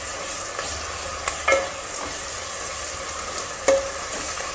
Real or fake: real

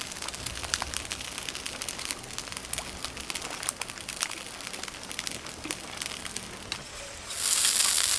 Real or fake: real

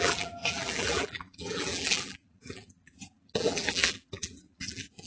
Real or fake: fake